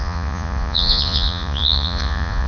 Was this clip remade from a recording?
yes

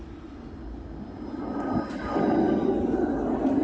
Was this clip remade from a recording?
no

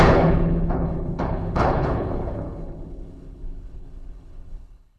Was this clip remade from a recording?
yes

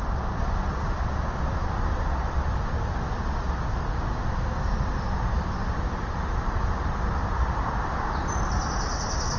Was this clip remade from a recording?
no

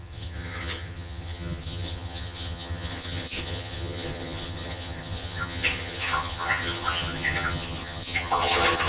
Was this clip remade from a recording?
yes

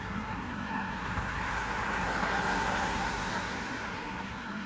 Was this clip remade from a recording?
yes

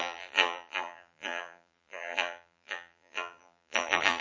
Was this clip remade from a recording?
yes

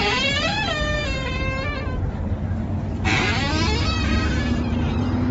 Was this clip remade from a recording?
no